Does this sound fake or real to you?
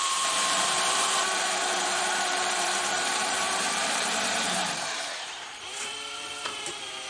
fake